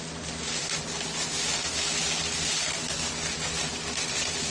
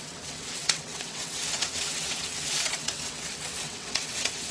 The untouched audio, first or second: first